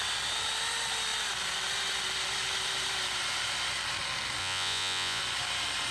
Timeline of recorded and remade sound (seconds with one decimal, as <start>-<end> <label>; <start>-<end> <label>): 0.0-4.4 recorded; 4.4-5.2 remade; 5.2-5.9 recorded